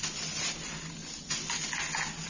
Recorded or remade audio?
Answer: recorded